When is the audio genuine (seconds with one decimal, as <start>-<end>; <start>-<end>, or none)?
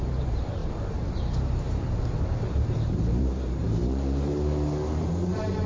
3.8-4.9